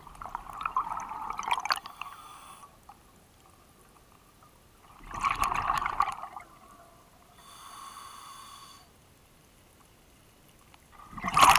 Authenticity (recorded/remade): recorded